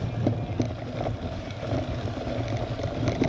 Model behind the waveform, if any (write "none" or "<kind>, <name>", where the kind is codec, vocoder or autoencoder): none